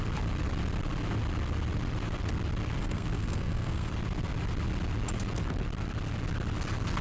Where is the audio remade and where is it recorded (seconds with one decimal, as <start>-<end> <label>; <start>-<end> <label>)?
0.0-2.8 recorded; 2.8-3.9 remade; 3.9-7.0 recorded